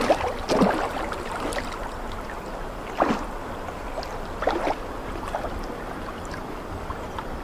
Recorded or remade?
recorded